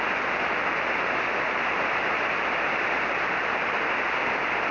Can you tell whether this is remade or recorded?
recorded